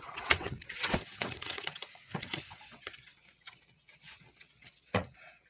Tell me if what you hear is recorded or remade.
remade